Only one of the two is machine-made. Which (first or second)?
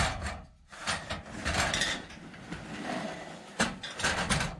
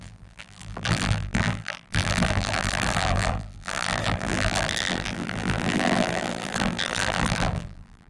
second